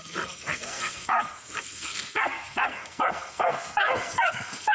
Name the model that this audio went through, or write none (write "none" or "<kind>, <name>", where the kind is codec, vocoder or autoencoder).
codec, SNAC